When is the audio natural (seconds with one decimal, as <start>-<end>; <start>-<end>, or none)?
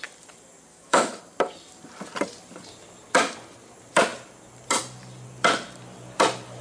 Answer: 0.0-0.7; 1.2-6.6